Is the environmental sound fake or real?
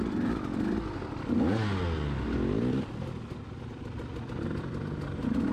real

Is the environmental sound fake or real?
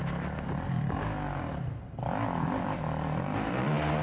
real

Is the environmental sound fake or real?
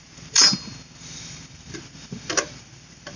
real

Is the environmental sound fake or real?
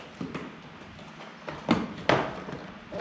real